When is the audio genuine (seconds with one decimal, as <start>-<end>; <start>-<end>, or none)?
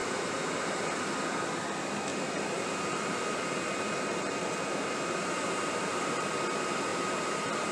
0.0-2.1; 6.3-6.9